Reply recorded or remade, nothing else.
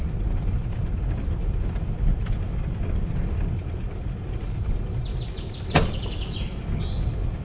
recorded